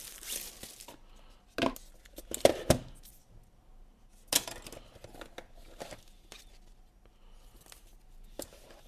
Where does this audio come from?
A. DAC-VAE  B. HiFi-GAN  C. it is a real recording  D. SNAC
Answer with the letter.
C